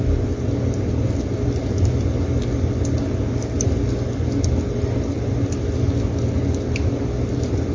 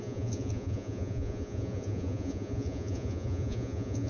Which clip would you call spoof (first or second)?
second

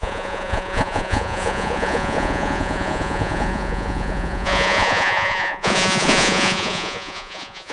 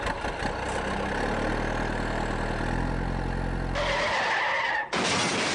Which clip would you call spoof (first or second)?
first